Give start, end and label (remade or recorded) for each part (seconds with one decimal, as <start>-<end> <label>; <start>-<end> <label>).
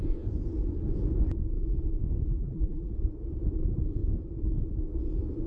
0.0-2.3 recorded; 2.3-2.9 remade; 2.9-5.5 recorded